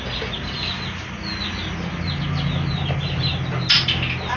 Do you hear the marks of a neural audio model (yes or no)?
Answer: no